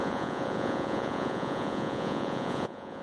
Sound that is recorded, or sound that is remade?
remade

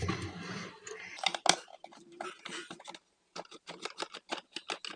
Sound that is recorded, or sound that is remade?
recorded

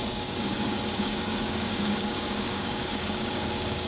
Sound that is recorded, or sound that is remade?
remade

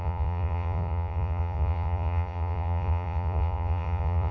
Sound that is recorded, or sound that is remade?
remade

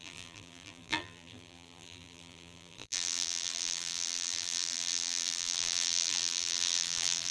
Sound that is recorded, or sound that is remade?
remade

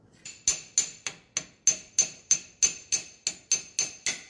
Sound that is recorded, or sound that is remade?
recorded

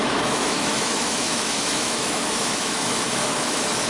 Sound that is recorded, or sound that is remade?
remade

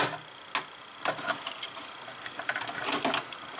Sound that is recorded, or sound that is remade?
recorded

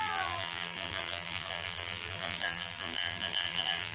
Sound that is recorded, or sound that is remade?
remade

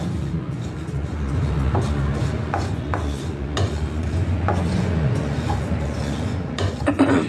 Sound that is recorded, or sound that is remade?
remade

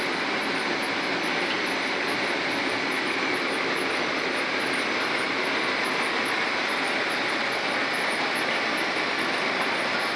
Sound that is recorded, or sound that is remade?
recorded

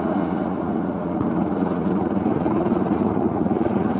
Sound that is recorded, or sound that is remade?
remade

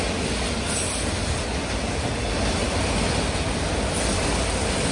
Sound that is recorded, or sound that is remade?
recorded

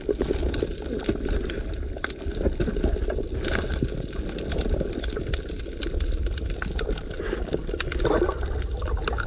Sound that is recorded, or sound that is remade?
recorded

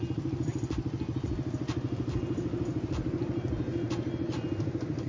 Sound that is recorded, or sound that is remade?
recorded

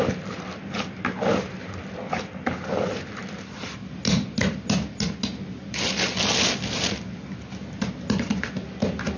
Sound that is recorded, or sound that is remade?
recorded